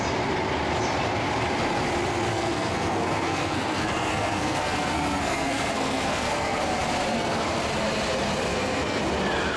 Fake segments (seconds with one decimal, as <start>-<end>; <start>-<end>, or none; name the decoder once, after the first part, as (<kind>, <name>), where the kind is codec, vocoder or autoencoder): 2.3-6.6 (codec, SNAC); 7.1-7.6; 8.5-9.0